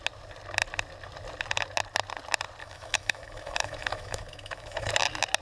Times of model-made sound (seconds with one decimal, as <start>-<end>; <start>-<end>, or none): 2.6-4.9